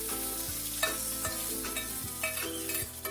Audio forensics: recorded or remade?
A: recorded